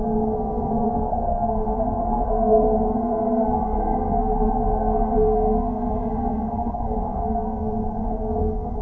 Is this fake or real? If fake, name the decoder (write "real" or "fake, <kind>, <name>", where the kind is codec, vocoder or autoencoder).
fake, codec, SNAC